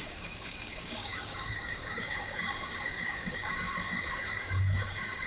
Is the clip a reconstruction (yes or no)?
yes